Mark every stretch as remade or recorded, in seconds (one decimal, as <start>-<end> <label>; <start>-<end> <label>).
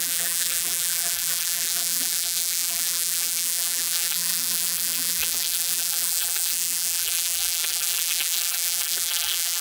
0.0-9.6 remade